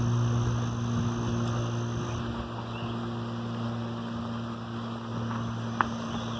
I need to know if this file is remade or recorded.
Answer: recorded